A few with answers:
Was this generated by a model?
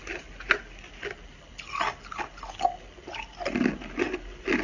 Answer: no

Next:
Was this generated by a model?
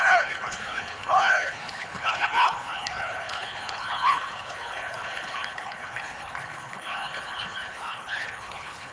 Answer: yes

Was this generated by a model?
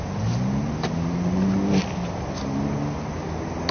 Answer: no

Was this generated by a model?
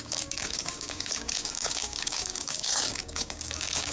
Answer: yes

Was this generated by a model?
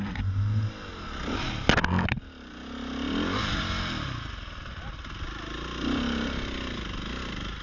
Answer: no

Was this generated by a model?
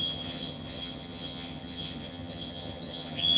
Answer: yes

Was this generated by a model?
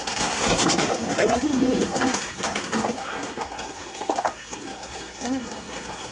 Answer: yes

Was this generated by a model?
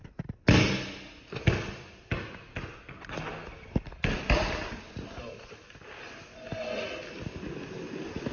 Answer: no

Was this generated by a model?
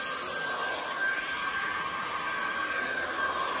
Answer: no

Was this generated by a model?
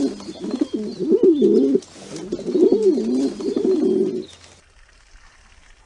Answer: no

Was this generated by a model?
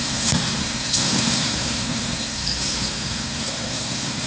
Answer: yes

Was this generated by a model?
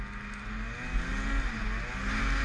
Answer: no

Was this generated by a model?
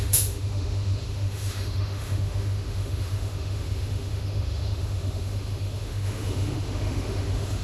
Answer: yes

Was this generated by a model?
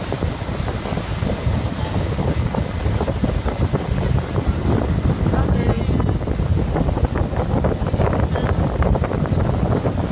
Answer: no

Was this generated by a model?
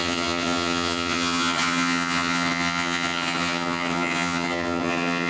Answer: yes